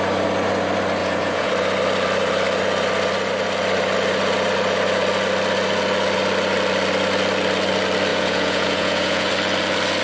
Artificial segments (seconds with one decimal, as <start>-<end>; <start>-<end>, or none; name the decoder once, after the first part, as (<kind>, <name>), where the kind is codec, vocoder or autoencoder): 1.0-1.5 (vocoder, Vocos); 8.1-9.3